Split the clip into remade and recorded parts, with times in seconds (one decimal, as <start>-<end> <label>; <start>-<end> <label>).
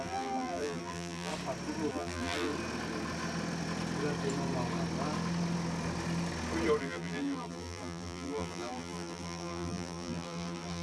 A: 0.0-1.3 remade; 1.3-1.9 recorded; 1.9-2.5 remade; 2.5-6.8 recorded; 6.8-10.8 remade